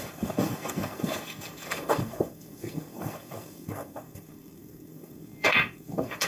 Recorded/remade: remade